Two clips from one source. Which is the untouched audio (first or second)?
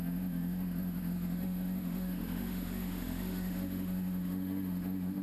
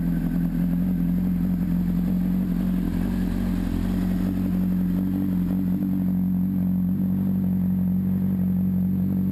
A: second